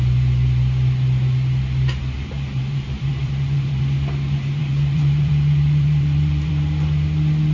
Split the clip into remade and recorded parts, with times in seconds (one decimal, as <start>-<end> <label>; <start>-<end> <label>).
0.0-2.0 recorded; 2.0-3.8 remade; 3.8-4.6 recorded; 4.6-6.5 remade; 6.5-7.5 recorded